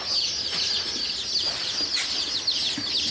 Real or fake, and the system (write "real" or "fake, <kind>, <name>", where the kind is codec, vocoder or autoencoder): real